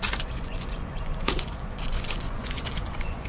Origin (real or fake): fake